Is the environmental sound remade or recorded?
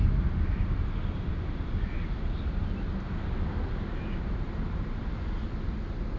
recorded